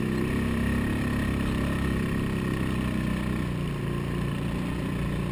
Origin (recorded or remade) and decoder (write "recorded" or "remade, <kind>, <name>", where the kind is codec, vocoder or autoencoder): recorded